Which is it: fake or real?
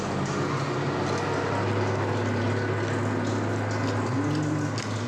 real